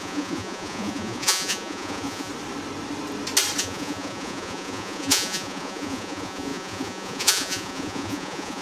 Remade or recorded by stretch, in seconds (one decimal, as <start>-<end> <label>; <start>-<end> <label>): 0.0-2.3 remade; 2.3-3.6 recorded; 3.6-8.6 remade